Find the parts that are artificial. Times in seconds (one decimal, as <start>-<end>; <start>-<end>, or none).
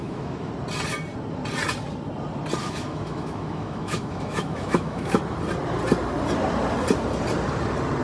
0.0-0.5; 2.6-5.2